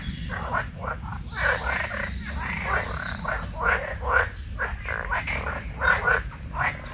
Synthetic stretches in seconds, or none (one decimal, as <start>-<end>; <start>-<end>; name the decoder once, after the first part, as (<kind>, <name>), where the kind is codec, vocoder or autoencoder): none